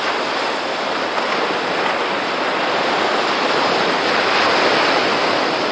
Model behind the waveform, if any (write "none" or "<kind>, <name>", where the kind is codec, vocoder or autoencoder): none